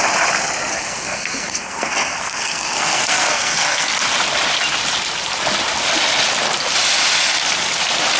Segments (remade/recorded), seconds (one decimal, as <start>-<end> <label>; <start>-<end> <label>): 0.0-0.7 recorded; 0.7-3.9 remade; 3.9-8.2 recorded